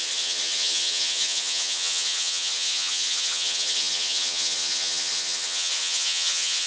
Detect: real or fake fake